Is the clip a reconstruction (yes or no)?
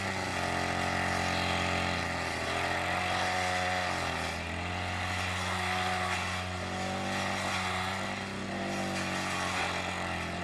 no